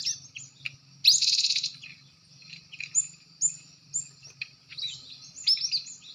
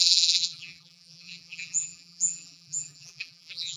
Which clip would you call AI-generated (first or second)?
second